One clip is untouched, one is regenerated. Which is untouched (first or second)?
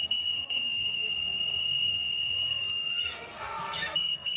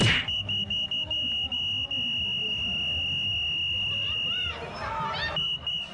second